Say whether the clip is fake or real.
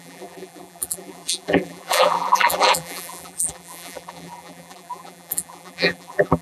fake